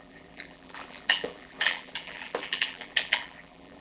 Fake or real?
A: fake